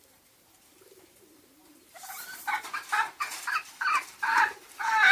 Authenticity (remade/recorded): remade